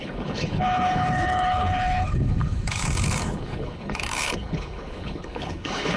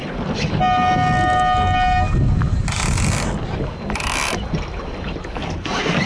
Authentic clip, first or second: second